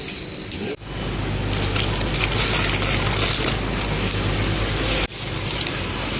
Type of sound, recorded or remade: recorded